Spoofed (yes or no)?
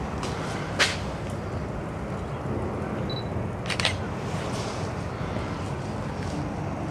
no